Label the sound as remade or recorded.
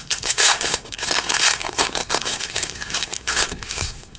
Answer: remade